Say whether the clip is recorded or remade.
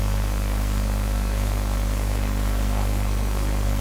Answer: remade